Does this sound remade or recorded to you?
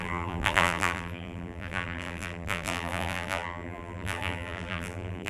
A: remade